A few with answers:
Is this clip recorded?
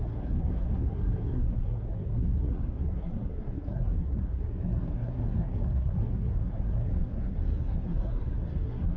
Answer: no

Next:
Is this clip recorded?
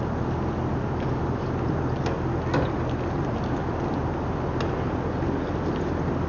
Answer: yes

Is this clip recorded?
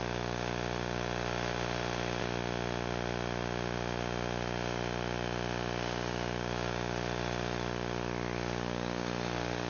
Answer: yes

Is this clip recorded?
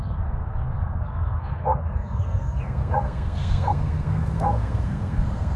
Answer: no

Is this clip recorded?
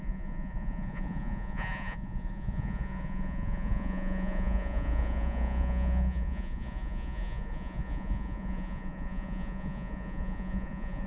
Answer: no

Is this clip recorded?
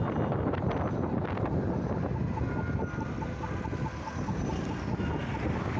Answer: yes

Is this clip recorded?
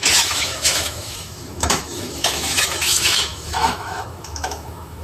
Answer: no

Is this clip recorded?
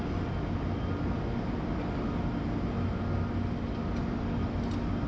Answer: yes